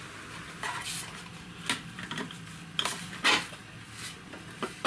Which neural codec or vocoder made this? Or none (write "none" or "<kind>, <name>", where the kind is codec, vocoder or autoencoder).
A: none